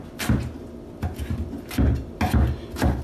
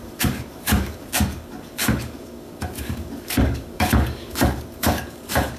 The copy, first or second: second